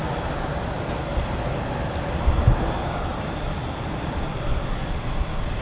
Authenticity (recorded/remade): recorded